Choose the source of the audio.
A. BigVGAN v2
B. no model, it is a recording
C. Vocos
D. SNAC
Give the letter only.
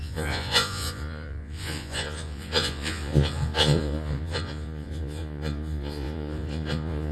C